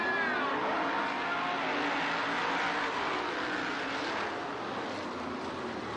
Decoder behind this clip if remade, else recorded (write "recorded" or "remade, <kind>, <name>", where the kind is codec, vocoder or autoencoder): recorded